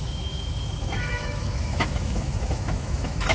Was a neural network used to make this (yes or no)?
yes